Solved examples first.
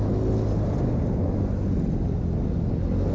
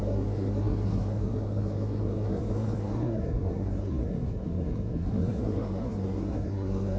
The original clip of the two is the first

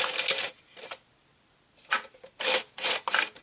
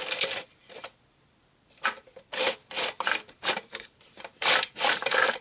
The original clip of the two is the first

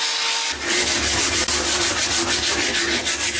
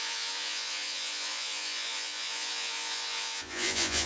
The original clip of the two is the first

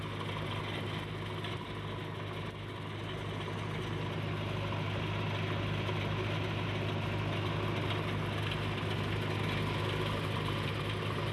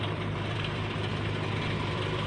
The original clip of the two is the first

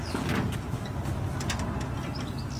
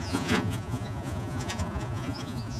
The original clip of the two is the first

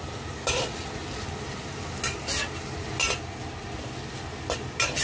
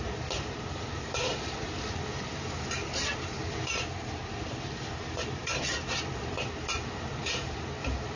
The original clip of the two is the first